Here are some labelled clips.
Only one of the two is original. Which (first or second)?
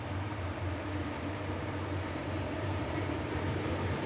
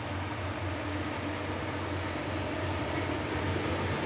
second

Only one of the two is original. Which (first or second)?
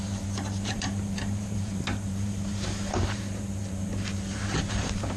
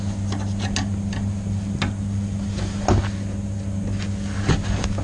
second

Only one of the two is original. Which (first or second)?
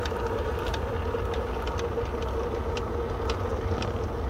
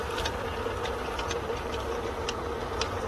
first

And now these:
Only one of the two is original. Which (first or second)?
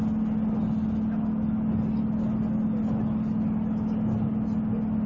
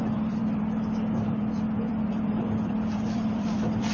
first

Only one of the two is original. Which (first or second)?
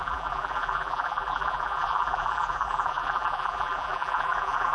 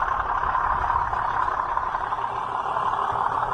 second